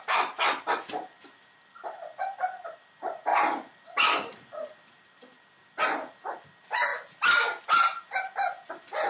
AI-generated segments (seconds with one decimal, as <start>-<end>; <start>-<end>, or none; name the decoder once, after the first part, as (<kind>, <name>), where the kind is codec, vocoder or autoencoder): none